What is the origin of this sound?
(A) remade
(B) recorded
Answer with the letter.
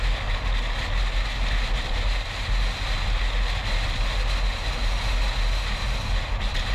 B